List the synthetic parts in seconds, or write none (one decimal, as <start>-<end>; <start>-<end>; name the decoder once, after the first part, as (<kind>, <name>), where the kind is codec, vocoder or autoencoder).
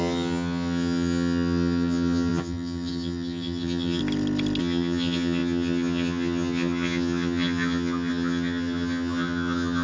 0.0-4.0 (vocoder, HiFi-GAN); 4.6-9.8